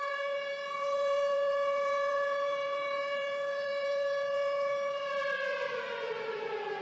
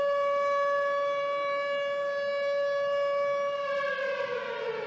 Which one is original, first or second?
second